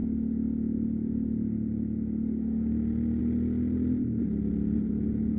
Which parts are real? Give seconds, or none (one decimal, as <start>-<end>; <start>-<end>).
0.0-5.4